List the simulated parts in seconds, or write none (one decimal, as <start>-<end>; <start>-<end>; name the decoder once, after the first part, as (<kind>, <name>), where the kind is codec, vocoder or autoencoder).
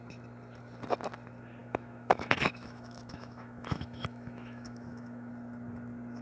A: 1.6-5.3 (autoencoder, DAC-VAE)